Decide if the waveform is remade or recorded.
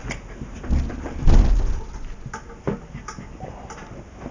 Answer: recorded